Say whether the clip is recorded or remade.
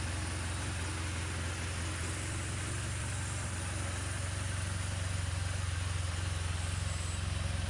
recorded